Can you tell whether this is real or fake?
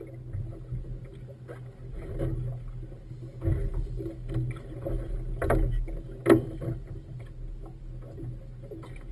real